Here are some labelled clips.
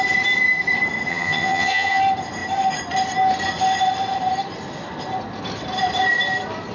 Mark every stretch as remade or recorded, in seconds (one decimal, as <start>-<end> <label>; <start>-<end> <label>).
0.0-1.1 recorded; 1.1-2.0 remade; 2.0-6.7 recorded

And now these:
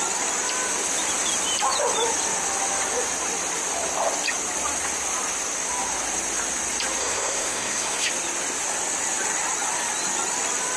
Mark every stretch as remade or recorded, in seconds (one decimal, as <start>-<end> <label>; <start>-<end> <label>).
0.0-7.0 recorded; 7.0-8.1 remade; 8.1-10.8 recorded

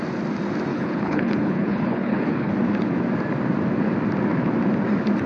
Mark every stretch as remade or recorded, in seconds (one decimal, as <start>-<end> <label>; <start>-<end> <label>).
0.0-0.7 recorded; 0.7-2.5 remade; 2.5-5.3 recorded